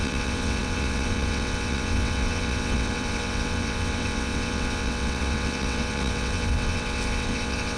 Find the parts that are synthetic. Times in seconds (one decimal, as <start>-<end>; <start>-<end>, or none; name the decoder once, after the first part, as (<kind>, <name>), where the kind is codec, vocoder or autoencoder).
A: 0.0-7.8 (vocoder, WaveNeXt)